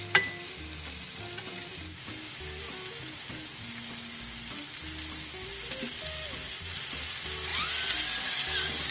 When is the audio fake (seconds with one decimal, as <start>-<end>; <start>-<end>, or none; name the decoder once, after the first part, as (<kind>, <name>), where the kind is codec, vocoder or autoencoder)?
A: none